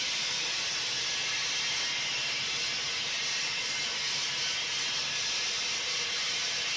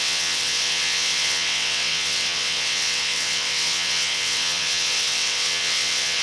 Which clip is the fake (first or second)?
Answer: second